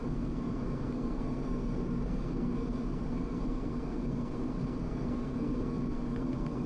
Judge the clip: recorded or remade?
remade